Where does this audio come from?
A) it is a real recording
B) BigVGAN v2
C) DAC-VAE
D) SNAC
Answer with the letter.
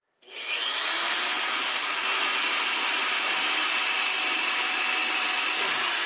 A